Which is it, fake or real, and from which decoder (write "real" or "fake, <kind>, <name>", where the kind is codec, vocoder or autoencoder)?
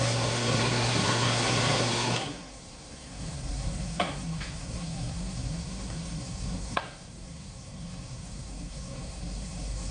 fake, codec, SNAC